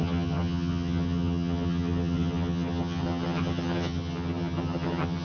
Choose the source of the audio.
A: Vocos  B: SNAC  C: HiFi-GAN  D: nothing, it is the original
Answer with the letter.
C